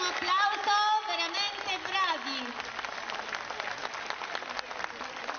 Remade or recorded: recorded